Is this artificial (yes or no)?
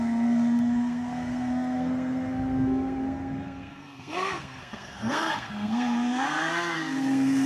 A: yes